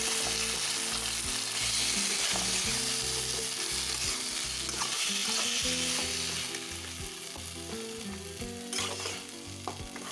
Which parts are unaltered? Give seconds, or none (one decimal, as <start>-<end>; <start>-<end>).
0.0-10.1